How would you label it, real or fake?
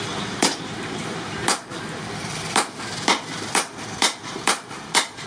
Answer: fake